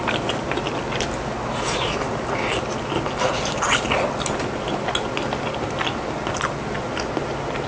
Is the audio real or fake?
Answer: real